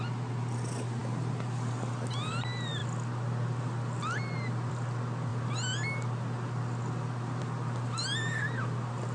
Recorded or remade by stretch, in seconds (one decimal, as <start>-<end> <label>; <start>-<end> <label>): 0.0-9.1 recorded